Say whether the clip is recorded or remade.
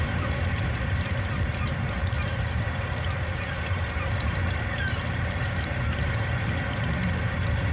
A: remade